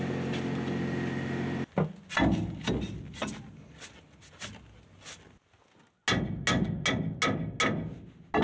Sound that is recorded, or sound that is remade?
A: recorded